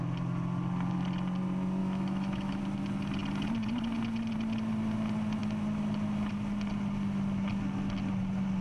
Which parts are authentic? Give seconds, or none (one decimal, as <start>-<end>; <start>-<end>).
0.0-1.8; 2.6-8.6